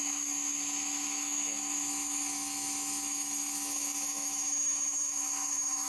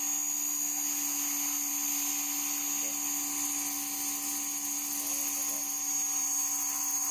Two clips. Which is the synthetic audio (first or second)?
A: first